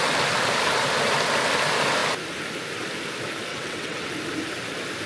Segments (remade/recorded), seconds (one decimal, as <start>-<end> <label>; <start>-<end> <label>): 0.0-3.5 recorded; 3.5-4.1 remade; 4.1-5.1 recorded